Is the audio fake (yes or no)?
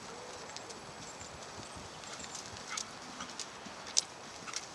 no